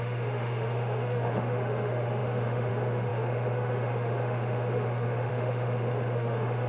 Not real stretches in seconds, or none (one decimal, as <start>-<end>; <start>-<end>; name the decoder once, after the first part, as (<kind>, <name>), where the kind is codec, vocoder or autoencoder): 0.0-6.7 (autoencoder, DAC-VAE)